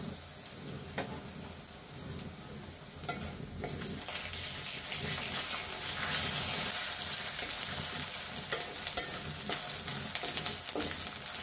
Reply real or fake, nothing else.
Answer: real